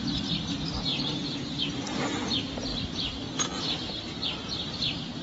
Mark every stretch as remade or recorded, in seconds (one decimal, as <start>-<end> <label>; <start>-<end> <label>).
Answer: 0.0-0.9 recorded; 0.9-1.6 remade; 1.6-5.2 recorded